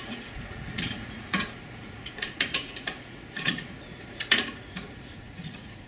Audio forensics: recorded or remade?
remade